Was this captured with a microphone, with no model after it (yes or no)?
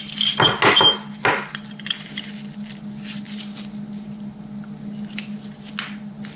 yes